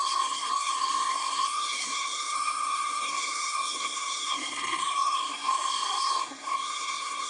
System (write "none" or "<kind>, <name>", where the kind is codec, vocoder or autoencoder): codec, SNAC